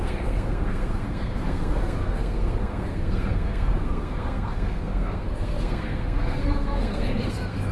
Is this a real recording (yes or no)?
no